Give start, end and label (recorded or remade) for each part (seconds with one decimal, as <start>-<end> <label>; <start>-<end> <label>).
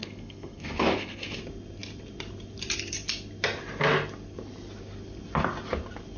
0.0-1.4 remade; 1.4-6.2 recorded